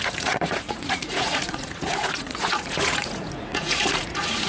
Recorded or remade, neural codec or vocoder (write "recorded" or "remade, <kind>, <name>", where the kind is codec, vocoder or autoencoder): remade, vocoder, Vocos